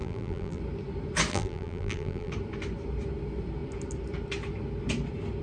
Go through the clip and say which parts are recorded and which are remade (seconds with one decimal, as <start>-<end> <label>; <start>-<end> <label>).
0.0-0.6 remade; 0.6-1.3 recorded; 1.3-2.3 remade; 2.3-5.4 recorded